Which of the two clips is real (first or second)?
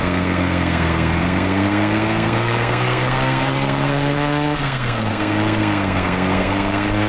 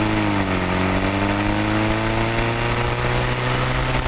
second